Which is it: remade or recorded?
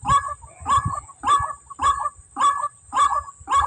recorded